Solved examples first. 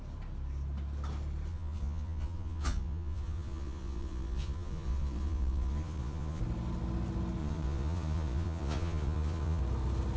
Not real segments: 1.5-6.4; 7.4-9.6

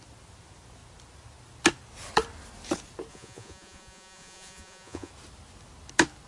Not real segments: 3.1-5.1

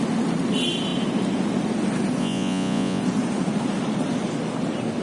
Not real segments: 2.2-3.0